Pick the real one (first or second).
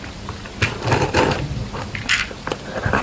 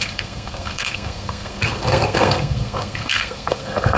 first